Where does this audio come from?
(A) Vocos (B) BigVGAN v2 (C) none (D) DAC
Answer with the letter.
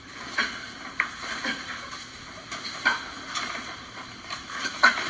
B